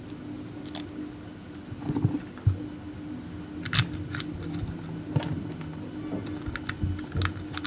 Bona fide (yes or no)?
yes